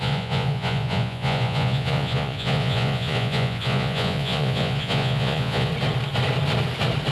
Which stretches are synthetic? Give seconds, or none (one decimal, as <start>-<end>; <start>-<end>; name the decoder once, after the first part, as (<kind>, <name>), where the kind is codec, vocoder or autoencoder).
0.0-5.7 (vocoder, Vocos)